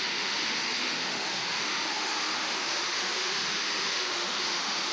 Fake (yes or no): yes